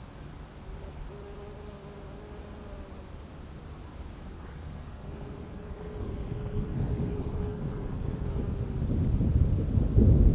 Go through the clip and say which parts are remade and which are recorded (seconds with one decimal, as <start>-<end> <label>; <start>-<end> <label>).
0.0-4.3 recorded; 4.3-8.4 remade; 8.4-10.3 recorded